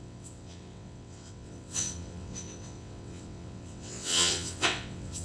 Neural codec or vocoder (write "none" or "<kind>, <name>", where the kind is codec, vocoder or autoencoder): vocoder, WaveNeXt